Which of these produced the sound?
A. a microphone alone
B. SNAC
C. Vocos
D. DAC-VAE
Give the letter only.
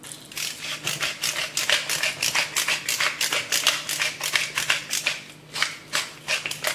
A